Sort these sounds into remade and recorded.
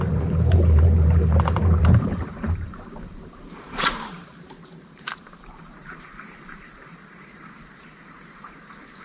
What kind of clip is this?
remade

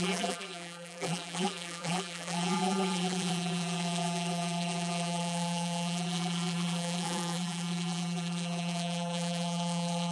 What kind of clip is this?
remade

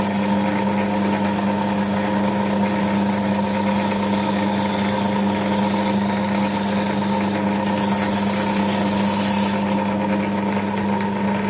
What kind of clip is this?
recorded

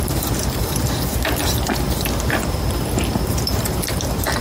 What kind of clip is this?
remade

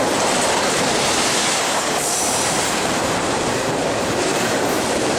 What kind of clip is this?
remade